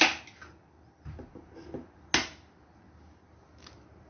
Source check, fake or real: real